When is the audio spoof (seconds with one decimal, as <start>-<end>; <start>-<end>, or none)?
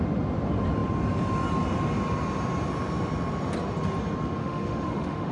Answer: 4.4-5.3